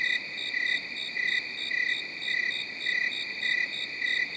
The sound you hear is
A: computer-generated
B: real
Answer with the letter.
B